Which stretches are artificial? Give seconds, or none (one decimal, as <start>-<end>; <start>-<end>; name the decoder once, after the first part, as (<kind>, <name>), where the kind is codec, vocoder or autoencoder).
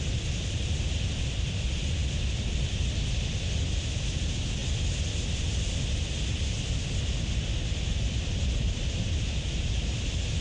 none